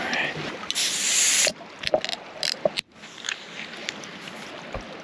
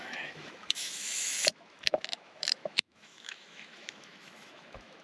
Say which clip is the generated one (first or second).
second